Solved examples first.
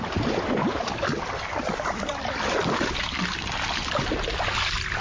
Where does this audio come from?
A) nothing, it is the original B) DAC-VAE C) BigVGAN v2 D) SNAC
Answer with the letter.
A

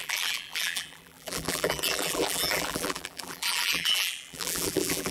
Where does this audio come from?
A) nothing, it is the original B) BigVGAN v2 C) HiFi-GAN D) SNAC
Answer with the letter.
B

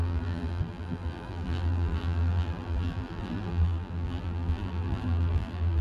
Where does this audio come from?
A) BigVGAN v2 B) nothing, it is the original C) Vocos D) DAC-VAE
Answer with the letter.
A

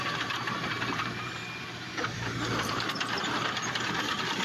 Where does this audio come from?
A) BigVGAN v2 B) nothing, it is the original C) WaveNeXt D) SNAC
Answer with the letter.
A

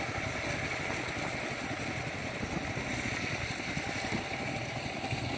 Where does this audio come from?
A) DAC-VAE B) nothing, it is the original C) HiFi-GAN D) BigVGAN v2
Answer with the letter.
B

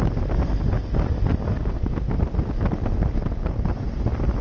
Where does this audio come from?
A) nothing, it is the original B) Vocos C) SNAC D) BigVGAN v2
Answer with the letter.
A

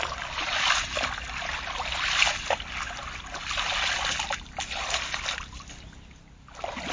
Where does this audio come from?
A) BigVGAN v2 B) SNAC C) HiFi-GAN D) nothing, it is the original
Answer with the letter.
D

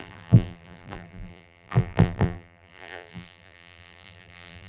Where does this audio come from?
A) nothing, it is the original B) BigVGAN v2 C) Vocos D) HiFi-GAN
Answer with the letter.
B